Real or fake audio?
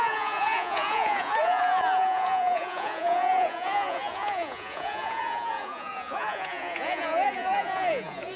fake